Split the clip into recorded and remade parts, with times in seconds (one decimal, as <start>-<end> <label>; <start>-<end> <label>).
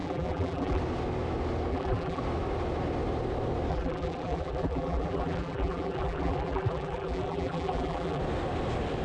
0.0-0.8 remade; 0.8-1.7 recorded; 1.7-2.2 remade; 2.2-3.7 recorded; 3.7-8.2 remade; 8.2-9.0 recorded